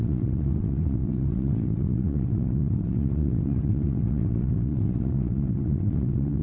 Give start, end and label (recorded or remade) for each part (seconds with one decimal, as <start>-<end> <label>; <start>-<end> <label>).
0.0-6.4 remade

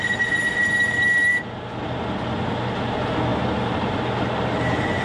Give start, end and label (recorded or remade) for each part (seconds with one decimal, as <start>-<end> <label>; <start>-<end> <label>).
0.0-5.0 recorded